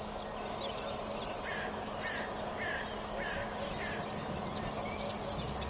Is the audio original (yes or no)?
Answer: yes